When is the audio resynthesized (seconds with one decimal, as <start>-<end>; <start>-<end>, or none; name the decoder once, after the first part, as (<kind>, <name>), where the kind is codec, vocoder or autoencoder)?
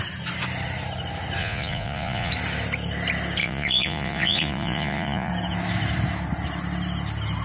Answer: 1.4-2.3 (vocoder, Vocos); 3.4-5.3